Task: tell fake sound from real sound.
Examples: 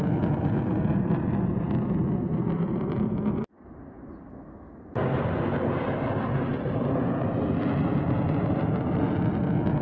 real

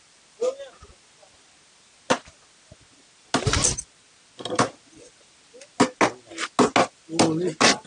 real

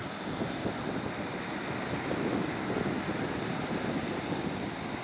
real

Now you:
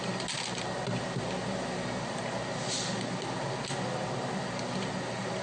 real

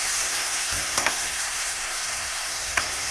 fake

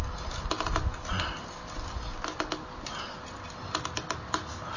real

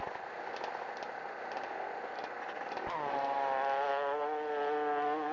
real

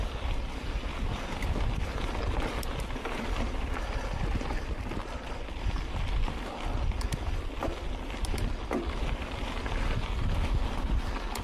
real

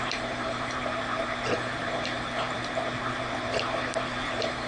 fake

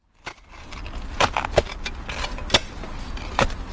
real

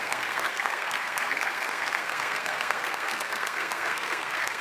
fake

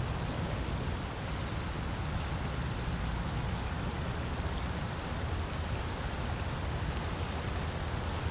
real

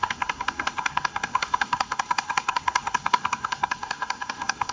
fake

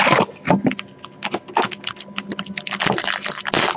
real